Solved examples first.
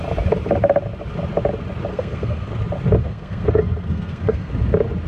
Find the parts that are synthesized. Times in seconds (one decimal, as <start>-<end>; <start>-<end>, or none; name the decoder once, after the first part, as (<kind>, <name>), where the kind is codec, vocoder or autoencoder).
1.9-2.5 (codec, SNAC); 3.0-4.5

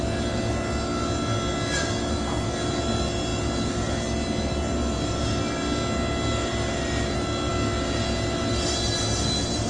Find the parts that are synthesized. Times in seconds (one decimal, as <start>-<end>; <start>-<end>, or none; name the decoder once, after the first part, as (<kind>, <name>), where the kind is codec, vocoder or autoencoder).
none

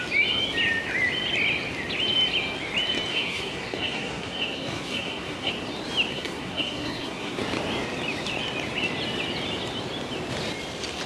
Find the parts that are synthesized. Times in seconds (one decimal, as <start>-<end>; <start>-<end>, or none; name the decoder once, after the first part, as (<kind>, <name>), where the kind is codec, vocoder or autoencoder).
3.1-5.5 (codec, SNAC); 6.1-7.4